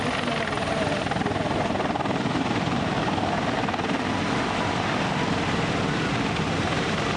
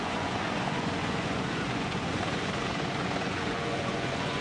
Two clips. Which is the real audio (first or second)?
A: first